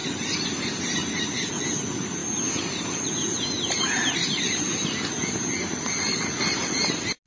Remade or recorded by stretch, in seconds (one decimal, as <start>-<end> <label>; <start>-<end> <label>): 0.0-7.3 recorded